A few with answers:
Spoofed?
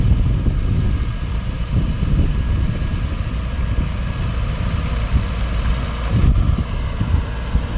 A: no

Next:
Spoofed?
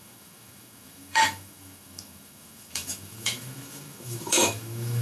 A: yes